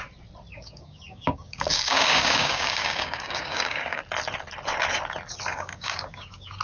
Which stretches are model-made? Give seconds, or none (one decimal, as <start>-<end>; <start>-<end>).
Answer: 0.5-4.0; 5.5-6.6